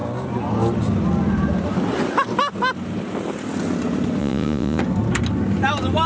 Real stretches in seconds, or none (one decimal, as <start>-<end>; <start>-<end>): 0.0-4.2; 4.8-6.1